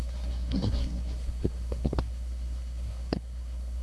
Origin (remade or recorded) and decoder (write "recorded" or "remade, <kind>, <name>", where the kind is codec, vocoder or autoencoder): remade, codec, SNAC